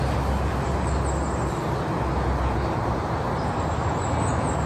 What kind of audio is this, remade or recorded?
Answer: recorded